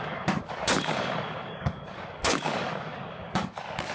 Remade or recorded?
remade